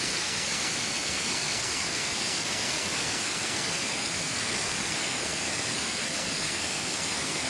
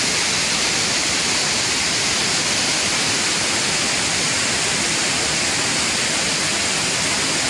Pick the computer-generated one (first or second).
first